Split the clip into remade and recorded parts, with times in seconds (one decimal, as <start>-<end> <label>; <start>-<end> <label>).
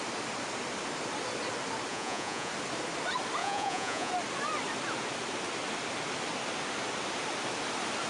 0.0-1.9 recorded; 1.9-2.5 remade; 2.5-3.4 recorded; 3.4-4.1 remade; 4.1-8.1 recorded